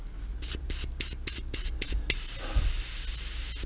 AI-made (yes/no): no